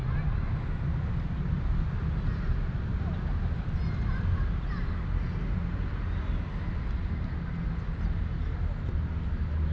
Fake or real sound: real